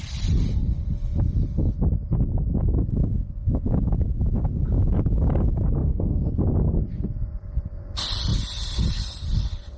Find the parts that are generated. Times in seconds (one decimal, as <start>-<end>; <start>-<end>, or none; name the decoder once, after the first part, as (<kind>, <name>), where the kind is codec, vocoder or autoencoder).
5.8-6.3 (autoencoder, DAC-VAE)

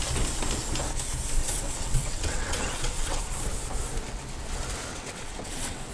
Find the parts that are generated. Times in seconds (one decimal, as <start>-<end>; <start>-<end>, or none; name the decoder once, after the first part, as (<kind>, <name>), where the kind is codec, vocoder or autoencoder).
1.4-3.2 (vocoder, WaveNeXt); 4.9-5.9

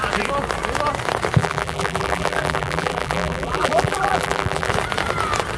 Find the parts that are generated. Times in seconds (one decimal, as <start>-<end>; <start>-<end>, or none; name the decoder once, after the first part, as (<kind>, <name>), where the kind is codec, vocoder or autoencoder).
1.4-4.7 (vocoder, BigVGAN v2)

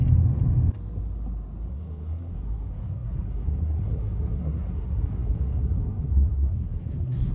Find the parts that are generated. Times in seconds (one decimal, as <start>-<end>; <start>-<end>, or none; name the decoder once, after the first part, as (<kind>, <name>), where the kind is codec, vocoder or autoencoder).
1.7-7.3 (codec, SNAC)

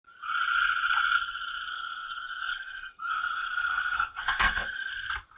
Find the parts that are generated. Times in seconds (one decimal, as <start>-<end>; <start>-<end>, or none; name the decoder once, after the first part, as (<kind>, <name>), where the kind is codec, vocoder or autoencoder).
1.7-4.9 (codec, SNAC)